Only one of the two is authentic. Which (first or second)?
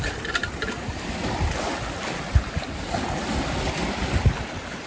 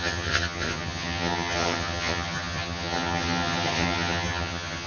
first